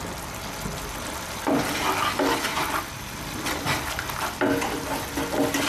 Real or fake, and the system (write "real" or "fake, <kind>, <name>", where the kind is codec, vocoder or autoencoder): real